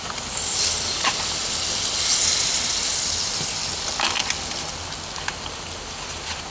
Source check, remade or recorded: recorded